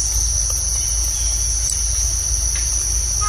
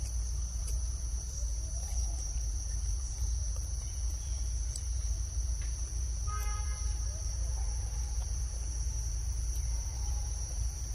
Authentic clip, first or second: first